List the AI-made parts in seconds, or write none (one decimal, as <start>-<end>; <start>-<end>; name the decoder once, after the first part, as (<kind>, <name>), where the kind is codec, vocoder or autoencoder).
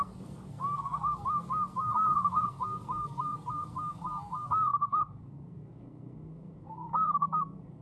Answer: 0.0-7.8 (codec, SNAC)